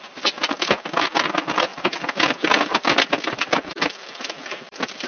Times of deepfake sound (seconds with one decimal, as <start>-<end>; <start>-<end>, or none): 0.0-5.1